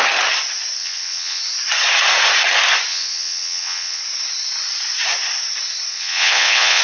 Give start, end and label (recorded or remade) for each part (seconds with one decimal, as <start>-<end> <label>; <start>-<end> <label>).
0.0-0.8 recorded; 0.8-1.4 remade; 1.4-2.9 recorded; 2.9-4.0 remade; 4.0-5.9 recorded; 5.9-6.8 remade